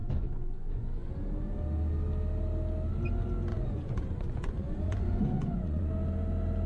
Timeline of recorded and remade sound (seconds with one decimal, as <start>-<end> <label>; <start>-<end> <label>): 0.0-1.1 remade; 1.1-3.5 recorded; 3.5-5.9 remade; 5.9-6.7 recorded

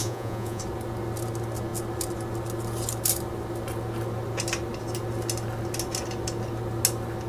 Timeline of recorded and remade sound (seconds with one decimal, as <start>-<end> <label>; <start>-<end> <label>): 0.0-0.6 remade; 0.6-7.3 recorded

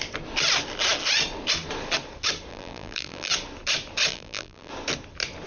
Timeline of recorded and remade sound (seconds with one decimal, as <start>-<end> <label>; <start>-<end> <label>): 0.0-2.5 recorded; 2.5-3.3 remade; 3.3-4.1 recorded; 4.1-4.7 remade; 4.7-5.5 recorded

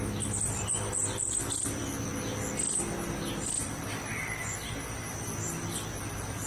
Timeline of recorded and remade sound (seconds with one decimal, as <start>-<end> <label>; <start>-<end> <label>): 0.0-2.1 remade; 2.1-3.3 recorded; 3.3-6.5 remade

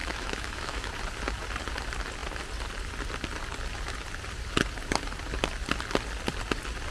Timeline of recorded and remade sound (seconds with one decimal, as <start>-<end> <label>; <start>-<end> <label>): 0.0-0.9 remade; 0.9-6.9 recorded

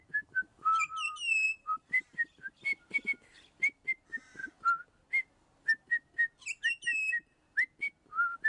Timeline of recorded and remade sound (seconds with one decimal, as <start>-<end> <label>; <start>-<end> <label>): 0.0-0.5 recorded; 0.5-2.5 remade; 2.5-8.5 recorded

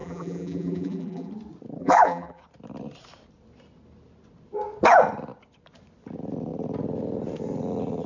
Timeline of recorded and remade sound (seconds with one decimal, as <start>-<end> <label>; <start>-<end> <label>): 0.0-1.3 remade; 1.3-1.8 recorded; 1.8-2.4 remade; 2.4-8.1 recorded